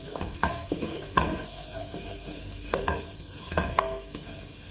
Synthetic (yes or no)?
yes